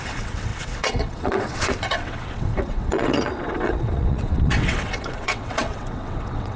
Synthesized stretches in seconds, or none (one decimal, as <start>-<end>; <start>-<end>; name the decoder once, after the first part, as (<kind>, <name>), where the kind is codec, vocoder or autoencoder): 0.0-6.6 (vocoder, WaveNeXt)